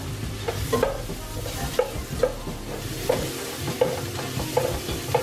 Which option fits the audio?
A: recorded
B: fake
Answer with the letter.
A